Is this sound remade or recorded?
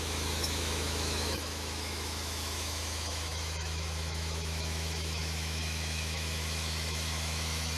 remade